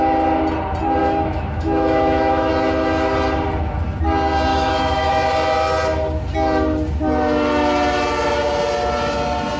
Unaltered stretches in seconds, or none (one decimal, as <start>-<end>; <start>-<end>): 0.0-1.0; 2.5-4.5; 5.1-9.6

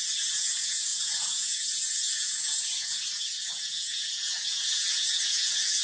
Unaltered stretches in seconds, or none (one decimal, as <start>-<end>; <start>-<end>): none

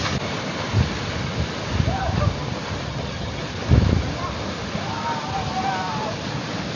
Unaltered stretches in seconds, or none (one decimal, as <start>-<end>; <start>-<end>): 0.0-2.9; 3.4-6.8

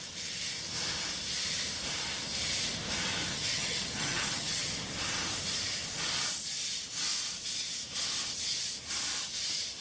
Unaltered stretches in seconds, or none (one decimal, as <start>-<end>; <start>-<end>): 0.0-3.3; 4.7-9.8